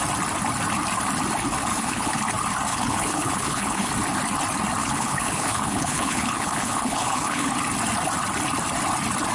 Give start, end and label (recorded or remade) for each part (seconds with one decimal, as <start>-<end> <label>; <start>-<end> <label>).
0.0-1.7 recorded; 1.7-2.2 remade; 2.2-2.7 recorded; 2.7-3.9 remade; 3.9-4.8 recorded; 4.8-7.5 remade; 7.5-9.3 recorded